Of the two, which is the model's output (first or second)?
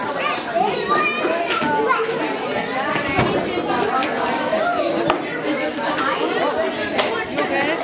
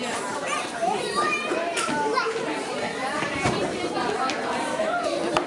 second